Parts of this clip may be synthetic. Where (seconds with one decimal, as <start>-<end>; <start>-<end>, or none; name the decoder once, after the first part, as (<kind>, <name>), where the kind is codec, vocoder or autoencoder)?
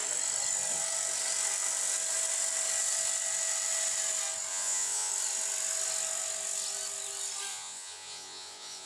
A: 4.5-5.1 (vocoder, Vocos); 7.5-8.9